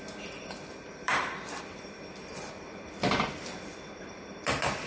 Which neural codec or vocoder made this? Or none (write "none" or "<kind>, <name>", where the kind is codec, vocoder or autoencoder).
vocoder, BigVGAN v2